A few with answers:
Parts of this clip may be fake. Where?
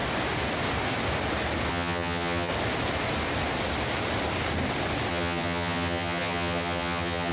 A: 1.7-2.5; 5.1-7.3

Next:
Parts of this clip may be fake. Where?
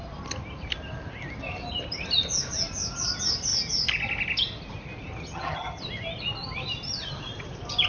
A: 5.2-5.8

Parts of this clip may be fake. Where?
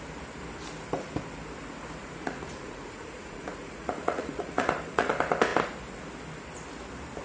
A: 2.0-5.1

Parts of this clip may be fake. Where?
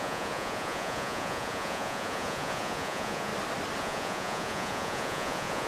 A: 0.0-3.3; 3.8-5.7